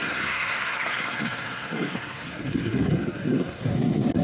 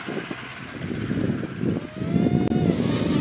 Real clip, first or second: second